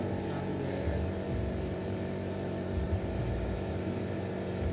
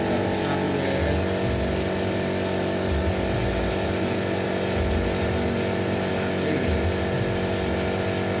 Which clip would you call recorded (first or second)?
second